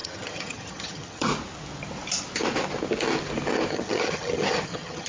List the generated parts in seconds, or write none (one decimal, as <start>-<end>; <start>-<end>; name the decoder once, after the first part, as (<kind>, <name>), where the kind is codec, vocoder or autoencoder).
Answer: 0.0-1.3 (vocoder, HiFi-GAN); 3.7-5.1